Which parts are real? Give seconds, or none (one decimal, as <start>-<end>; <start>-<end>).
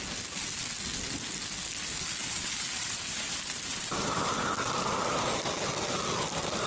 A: 0.0-2.2; 4.2-6.7